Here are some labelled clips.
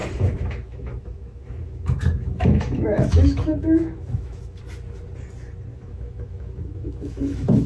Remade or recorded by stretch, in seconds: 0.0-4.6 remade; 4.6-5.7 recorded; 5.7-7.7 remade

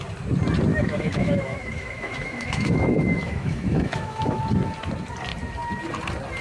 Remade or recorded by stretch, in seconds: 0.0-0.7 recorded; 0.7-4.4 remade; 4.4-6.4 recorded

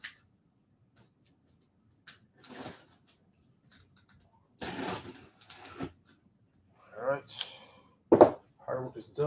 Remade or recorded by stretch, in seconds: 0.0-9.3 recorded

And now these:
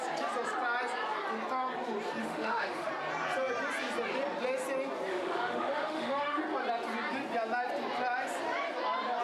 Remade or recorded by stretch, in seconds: 0.0-2.2 recorded; 2.2-2.9 remade; 2.9-5.1 recorded; 5.1-6.4 remade; 6.4-9.2 recorded